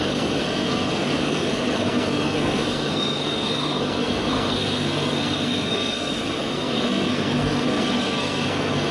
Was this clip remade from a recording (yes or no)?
yes